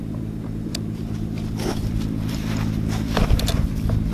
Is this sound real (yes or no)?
no